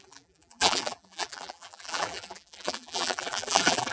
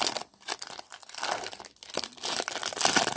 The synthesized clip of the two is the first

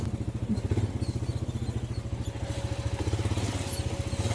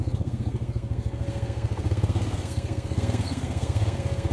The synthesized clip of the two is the second